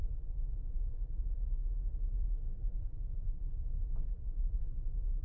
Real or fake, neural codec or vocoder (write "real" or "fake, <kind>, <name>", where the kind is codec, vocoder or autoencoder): fake, vocoder, BigVGAN v2